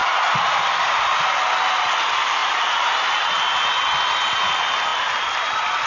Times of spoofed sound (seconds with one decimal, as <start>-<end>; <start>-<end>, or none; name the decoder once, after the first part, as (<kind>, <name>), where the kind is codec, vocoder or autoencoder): 0.0-1.0 (vocoder, BigVGAN v2); 2.4-3.1

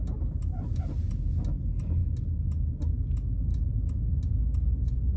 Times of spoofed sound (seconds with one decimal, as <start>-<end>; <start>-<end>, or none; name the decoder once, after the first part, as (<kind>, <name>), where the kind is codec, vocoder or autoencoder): none

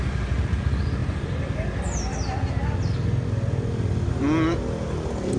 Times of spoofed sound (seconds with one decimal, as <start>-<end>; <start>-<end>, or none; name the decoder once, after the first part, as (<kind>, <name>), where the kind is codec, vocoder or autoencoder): none

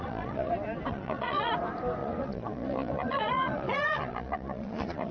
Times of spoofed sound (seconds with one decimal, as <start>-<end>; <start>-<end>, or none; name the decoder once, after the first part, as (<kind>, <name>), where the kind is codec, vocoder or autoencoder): 0.0-0.5 (vocoder, Vocos); 0.9-1.5; 2.0-5.1

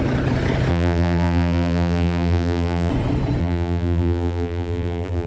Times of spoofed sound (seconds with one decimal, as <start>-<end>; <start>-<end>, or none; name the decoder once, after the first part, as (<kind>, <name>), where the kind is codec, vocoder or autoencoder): 0.7-2.9 (vocoder, BigVGAN v2); 3.4-5.3